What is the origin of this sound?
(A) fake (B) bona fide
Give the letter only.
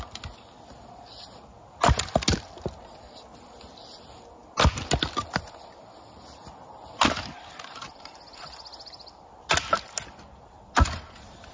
B